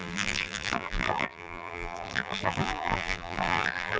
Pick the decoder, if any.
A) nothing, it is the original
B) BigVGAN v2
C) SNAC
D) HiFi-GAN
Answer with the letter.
B